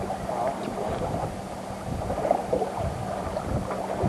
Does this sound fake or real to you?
real